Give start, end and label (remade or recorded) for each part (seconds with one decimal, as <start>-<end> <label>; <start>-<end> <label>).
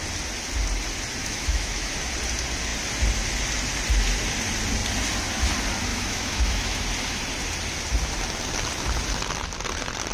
0.0-1.2 recorded; 1.2-1.9 remade; 1.9-5.9 recorded; 5.9-6.8 remade; 6.8-10.1 recorded